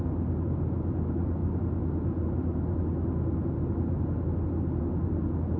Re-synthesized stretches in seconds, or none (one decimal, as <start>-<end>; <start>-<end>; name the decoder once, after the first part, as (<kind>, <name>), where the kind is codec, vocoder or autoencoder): none